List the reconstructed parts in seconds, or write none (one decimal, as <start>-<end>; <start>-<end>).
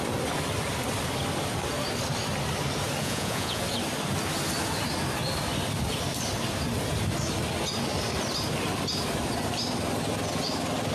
3.0-3.6